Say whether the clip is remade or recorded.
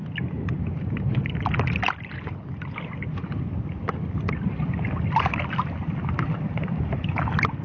recorded